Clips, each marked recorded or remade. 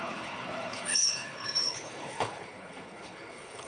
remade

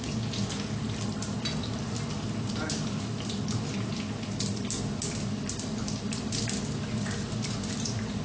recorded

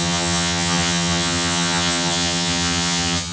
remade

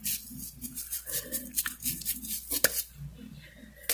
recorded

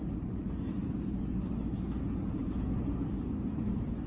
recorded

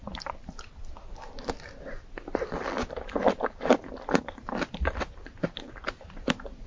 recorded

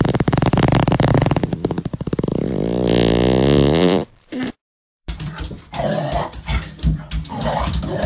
remade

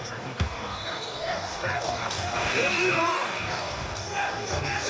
remade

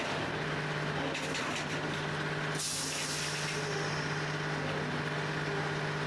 recorded